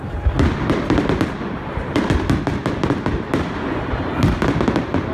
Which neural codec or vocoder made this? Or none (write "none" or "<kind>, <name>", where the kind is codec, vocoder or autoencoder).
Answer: none